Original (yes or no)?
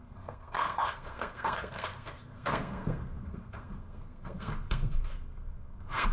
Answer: no